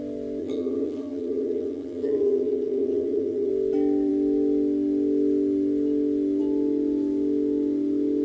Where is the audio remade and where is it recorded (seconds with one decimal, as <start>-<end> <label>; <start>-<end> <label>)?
0.0-0.4 recorded; 0.4-3.5 remade; 3.5-8.2 recorded